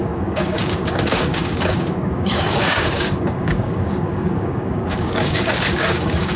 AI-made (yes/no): yes